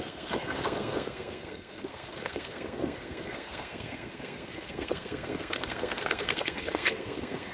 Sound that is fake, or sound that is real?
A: fake